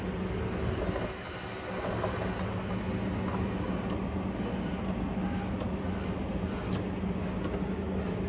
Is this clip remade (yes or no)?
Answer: no